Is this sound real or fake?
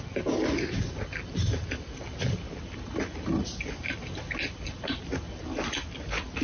real